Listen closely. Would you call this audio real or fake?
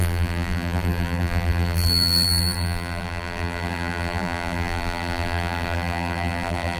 fake